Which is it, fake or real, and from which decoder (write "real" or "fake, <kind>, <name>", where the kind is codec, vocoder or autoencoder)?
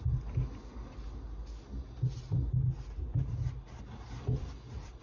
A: real